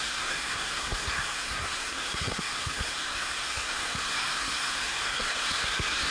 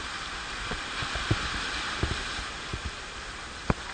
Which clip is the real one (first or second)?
second